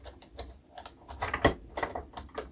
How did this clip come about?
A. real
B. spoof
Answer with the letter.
A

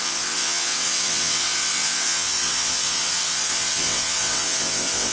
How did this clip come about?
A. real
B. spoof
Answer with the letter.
B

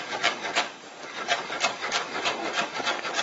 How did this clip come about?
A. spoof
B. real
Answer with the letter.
A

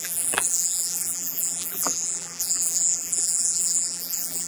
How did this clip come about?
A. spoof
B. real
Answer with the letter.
A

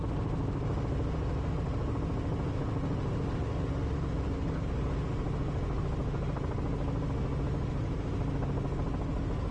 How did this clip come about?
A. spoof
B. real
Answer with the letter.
B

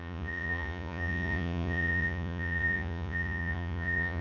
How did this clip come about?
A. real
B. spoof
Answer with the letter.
B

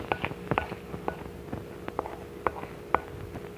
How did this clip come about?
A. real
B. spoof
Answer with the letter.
A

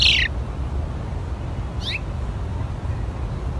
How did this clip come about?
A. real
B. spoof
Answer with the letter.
A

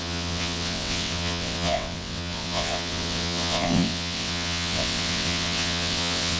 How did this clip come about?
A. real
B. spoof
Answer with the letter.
B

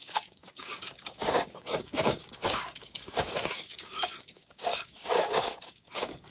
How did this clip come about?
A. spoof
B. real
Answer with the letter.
A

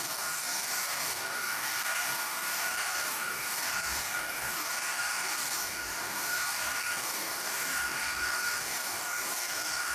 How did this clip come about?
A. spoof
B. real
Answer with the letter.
A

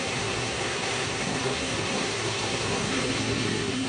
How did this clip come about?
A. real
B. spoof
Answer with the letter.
B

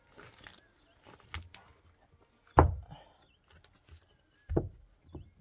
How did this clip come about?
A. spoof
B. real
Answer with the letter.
B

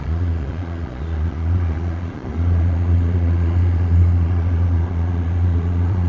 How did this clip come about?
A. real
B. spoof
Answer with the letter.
B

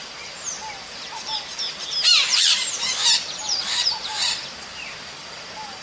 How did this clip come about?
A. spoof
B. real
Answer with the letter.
A